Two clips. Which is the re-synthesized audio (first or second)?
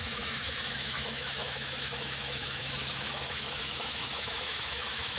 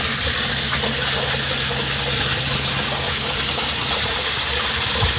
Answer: first